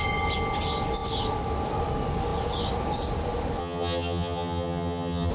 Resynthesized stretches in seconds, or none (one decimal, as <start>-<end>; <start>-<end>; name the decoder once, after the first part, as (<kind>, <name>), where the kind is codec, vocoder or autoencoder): 3.6-5.3 (vocoder, HiFi-GAN)